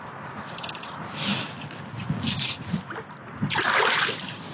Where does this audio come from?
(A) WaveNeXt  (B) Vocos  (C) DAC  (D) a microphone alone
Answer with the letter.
D